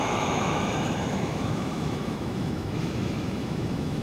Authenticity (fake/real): fake